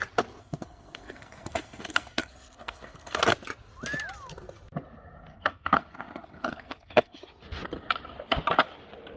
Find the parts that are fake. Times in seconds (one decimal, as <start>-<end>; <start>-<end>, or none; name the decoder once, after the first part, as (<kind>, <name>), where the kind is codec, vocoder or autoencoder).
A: 0.4-3.2 (codec, SNAC); 5.3-7.2